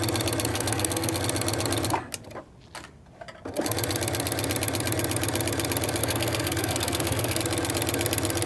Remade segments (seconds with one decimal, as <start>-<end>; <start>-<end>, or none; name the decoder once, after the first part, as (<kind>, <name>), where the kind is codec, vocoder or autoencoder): 0.5-1.2 (codec, SNAC); 6.0-7.4